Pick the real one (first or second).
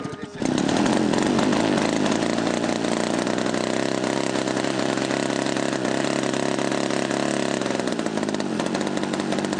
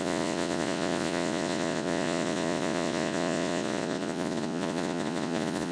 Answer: first